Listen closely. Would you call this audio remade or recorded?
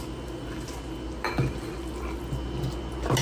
recorded